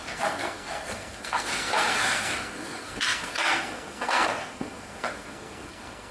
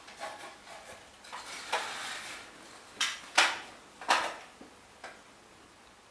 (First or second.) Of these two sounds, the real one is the second